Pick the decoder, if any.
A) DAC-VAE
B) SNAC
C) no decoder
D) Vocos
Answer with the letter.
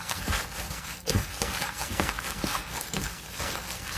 B